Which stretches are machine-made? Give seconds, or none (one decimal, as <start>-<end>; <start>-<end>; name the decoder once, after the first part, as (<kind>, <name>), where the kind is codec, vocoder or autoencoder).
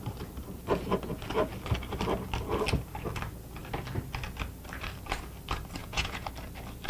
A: 5.8-6.3 (vocoder, Vocos)